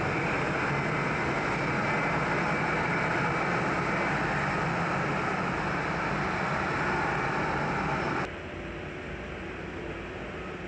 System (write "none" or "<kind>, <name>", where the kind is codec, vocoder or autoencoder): none